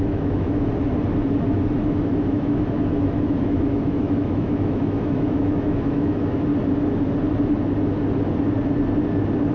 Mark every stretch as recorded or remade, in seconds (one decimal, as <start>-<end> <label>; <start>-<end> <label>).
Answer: 0.0-0.7 remade; 0.7-1.5 recorded; 1.5-6.5 remade; 6.5-9.5 recorded

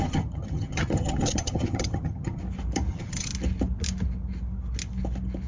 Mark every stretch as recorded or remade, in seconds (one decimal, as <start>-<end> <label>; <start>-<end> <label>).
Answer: 0.0-2.4 remade; 2.4-2.9 recorded; 2.9-3.3 remade; 3.3-5.5 recorded

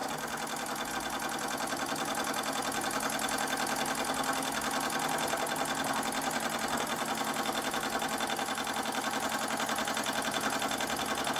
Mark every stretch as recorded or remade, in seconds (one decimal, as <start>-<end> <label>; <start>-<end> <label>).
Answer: 0.0-11.4 recorded

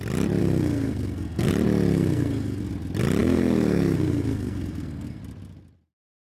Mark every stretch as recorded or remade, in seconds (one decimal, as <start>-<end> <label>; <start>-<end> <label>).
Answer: 0.0-0.4 recorded; 0.4-1.5 remade; 1.5-1.9 recorded; 1.9-2.7 remade; 2.7-3.2 recorded; 3.2-5.2 remade; 5.2-6.3 recorded

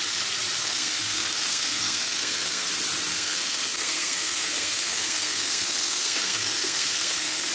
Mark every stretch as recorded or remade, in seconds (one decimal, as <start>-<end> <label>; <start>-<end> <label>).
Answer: 0.0-0.6 recorded; 0.6-2.7 remade; 2.7-3.1 recorded; 3.1-7.5 remade

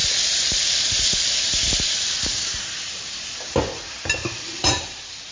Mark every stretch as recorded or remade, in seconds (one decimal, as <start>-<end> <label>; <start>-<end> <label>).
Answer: 0.0-5.3 remade